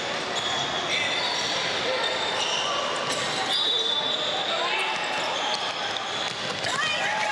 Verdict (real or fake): real